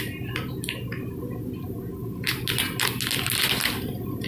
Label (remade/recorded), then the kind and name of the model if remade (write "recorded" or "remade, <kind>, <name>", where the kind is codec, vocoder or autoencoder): recorded